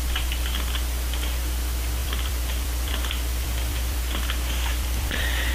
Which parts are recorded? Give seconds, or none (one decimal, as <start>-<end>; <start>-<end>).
0.0-2.0; 4.0-4.7